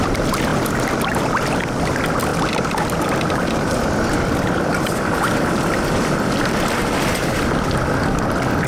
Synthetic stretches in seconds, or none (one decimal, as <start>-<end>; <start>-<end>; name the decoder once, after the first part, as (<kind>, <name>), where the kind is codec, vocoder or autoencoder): none